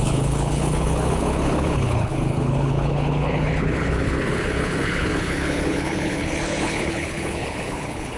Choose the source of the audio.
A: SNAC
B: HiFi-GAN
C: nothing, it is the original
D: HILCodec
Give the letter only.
D